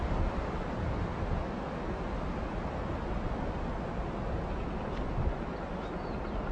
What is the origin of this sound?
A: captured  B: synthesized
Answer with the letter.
A